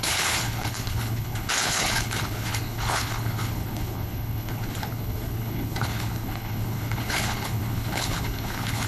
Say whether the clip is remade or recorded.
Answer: remade